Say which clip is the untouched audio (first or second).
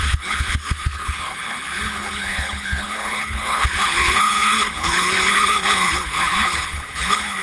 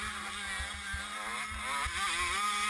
second